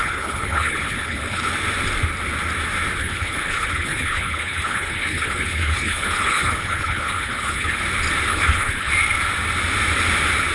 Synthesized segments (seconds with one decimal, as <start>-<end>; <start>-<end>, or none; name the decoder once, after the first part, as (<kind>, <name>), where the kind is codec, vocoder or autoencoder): 0.0-1.5 (codec, HILCodec); 3.0-7.8; 8.3-8.9